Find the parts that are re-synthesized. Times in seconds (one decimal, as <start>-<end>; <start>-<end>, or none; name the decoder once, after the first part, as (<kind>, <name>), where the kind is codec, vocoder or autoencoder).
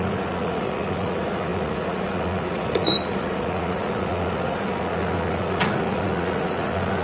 0.0-7.0 (vocoder, Vocos)